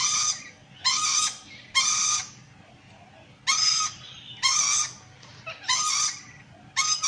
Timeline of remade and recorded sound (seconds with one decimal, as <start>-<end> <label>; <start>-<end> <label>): 0.0-5.3 recorded; 5.3-6.4 remade; 6.4-7.1 recorded